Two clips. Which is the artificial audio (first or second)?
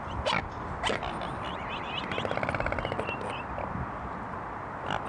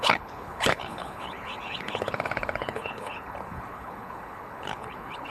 second